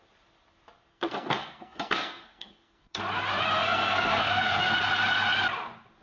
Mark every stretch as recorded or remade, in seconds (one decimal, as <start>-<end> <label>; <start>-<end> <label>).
0.0-0.9 recorded; 0.9-3.0 remade; 3.0-3.6 recorded; 3.6-4.7 remade; 4.7-6.0 recorded